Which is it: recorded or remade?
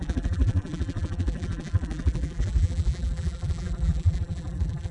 remade